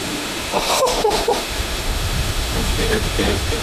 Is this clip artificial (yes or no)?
yes